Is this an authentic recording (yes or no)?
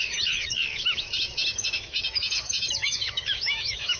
no